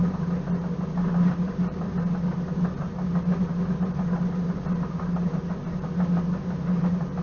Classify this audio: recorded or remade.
recorded